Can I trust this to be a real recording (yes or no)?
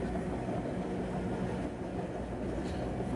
yes